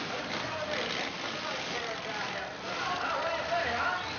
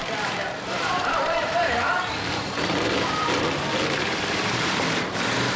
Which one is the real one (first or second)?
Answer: first